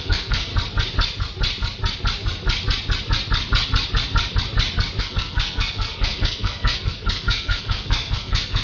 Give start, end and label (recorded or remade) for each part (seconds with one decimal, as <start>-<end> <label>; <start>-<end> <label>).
0.0-0.5 remade; 0.5-5.0 recorded; 5.0-8.6 remade